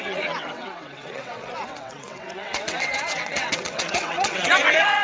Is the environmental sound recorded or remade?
remade